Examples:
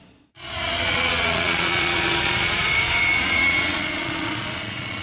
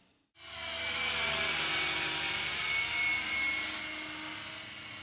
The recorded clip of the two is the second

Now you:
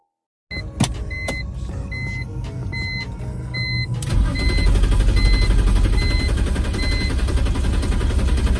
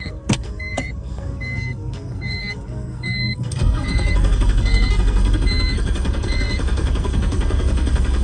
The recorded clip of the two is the first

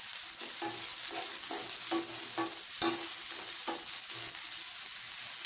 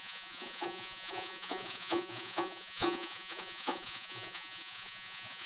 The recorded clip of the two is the first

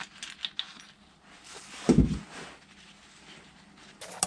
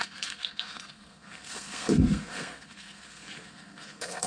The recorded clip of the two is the first